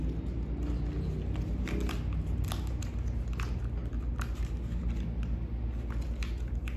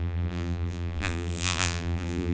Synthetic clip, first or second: second